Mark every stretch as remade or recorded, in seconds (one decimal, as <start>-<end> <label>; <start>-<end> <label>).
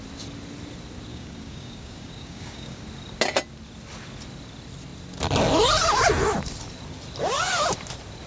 0.0-1.1 recorded; 1.1-2.8 remade; 2.8-8.3 recorded